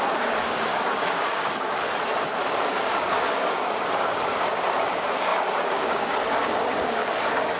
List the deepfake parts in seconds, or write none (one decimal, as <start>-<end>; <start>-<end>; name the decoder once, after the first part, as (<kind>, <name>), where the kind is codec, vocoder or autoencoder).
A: 0.0-1.8 (codec, DAC); 2.5-7.6